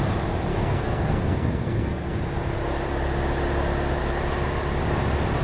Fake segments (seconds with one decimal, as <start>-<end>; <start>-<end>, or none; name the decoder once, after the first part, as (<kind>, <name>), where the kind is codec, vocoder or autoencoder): 0.5-2.2 (codec, SNAC)

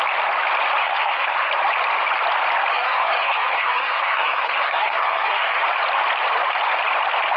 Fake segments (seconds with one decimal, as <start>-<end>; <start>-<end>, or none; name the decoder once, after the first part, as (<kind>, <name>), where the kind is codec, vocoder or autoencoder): 0.8-1.5 (codec, SNAC); 2.7-5.6

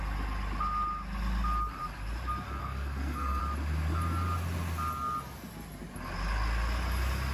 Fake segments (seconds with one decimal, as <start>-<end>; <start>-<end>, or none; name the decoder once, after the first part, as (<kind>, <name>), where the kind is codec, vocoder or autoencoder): 2.6-3.4 (codec, SNAC)

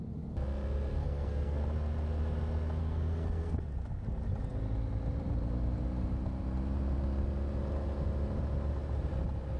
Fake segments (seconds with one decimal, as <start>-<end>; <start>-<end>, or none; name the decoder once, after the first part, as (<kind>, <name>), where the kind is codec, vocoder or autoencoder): 1.0-1.6 (codec, SNAC); 2.8-3.6

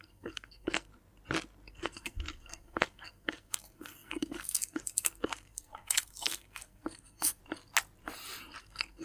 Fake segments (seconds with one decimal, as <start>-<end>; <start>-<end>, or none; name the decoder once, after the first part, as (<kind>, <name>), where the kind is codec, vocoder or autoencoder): 0.0-0.9 (codec, SNAC); 1.7-7.4; 8.6-9.0

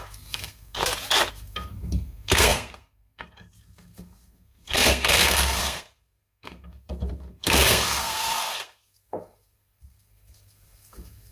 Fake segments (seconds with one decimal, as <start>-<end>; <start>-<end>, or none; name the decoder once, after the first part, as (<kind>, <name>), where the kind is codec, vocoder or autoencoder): 0.0-0.8 (codec, SNAC); 1.3-11.3